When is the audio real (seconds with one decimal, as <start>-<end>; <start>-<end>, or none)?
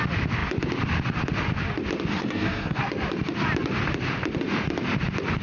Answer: 0.0-2.1; 2.8-5.4